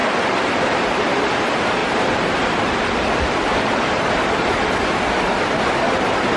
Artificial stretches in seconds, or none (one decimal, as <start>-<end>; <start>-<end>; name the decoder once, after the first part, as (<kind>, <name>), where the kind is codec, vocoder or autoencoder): 0.6-1.8 (vocoder, BigVGAN v2); 5.6-6.4